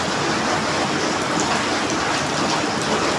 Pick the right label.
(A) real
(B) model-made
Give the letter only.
A